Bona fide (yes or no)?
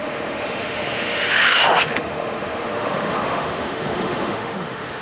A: no